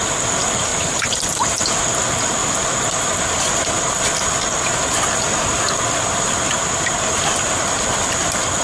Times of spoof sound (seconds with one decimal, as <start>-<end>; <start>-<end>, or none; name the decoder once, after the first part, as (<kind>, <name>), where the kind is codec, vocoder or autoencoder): 0.7-1.4 (vocoder, BigVGAN v2); 2.4-7.6